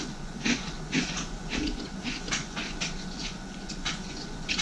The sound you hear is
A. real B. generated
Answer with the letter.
B